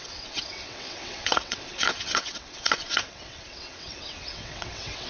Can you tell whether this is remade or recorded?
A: remade